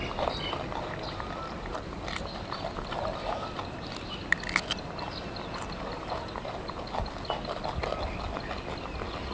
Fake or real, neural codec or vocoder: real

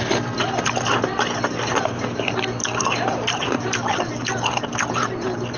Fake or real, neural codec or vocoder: real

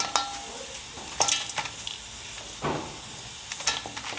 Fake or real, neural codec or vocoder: real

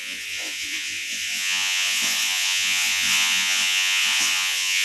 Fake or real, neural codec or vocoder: fake, vocoder, Vocos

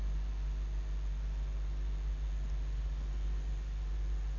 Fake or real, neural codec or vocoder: real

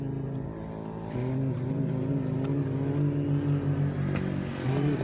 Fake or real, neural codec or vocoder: real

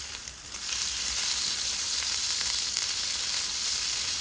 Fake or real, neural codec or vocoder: fake, vocoder, BigVGAN v2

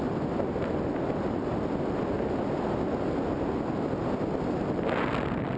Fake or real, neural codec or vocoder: real